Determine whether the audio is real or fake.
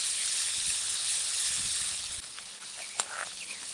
fake